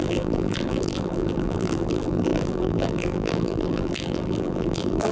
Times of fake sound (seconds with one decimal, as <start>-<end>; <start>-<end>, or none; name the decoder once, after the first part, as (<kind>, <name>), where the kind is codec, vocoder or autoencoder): 0.0-5.1 (vocoder, BigVGAN v2)